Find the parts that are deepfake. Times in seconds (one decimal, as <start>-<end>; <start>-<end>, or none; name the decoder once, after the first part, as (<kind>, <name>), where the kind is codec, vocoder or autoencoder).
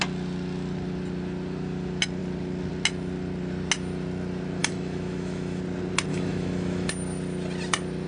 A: 4.6-5.6 (autoencoder, DAC-VAE); 6.1-6.9